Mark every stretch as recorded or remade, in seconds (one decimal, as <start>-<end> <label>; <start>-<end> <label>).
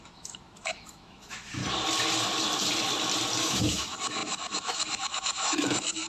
0.0-1.6 remade; 1.6-3.4 recorded; 3.4-6.1 remade